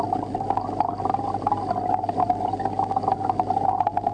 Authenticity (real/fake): real